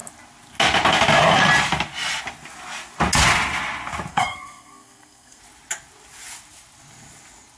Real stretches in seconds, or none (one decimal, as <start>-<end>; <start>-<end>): 0.0-4.1; 5.4-7.6